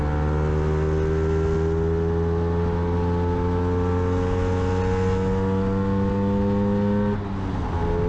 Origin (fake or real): real